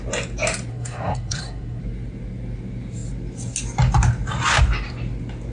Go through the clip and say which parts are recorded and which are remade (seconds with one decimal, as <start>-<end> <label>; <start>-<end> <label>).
0.0-0.7 recorded; 0.7-1.8 remade; 1.8-5.5 recorded